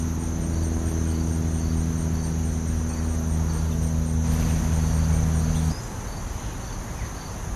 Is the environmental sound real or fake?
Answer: real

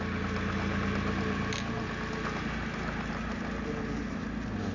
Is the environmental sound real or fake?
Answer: real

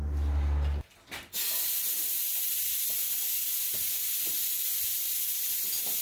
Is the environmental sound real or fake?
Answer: real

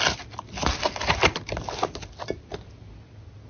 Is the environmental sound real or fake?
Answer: real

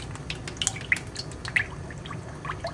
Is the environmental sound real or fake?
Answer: real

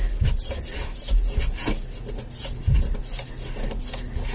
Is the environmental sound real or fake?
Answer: real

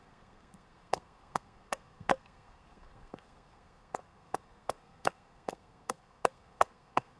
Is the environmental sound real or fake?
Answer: fake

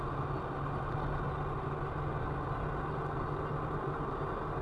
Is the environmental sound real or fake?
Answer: real